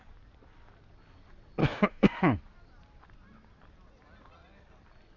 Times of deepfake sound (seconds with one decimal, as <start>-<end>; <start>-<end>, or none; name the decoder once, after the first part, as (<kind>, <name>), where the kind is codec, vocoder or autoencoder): 1.6-2.4 (autoencoder, DAC-VAE)